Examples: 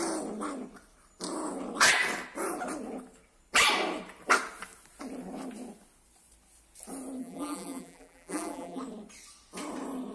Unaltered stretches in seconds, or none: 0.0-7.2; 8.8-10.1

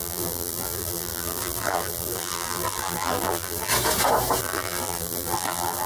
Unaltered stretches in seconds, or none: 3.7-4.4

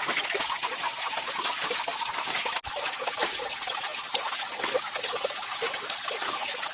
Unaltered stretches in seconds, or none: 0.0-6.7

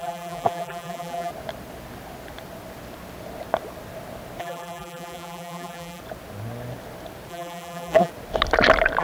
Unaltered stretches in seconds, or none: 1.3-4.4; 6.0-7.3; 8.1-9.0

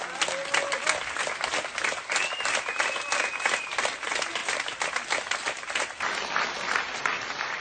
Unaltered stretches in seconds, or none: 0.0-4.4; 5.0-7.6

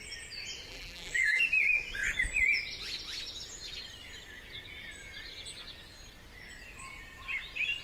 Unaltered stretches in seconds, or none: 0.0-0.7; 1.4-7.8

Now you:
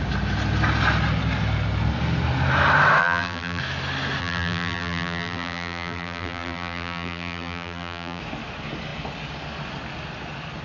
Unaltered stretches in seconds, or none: 0.0-3.0; 3.6-4.2; 8.2-10.6

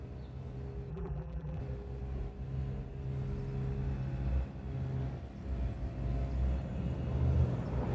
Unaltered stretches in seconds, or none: 0.0-0.9; 1.6-7.9